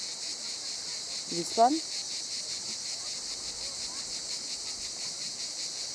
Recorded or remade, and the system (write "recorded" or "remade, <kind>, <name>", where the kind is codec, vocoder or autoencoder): recorded